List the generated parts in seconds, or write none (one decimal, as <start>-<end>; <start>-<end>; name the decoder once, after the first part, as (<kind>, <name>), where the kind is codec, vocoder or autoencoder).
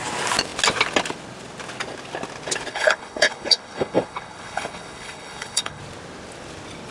2.7-5.8 (codec, HILCodec)